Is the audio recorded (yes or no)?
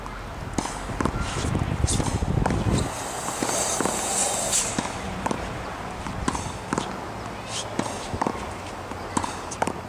yes